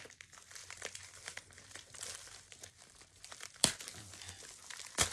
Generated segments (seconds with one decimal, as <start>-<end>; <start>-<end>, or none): 0.6-3.7